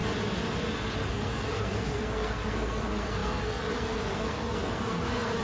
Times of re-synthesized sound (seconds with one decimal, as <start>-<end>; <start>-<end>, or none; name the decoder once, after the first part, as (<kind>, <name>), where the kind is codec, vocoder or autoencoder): 1.1-5.4 (codec, SNAC)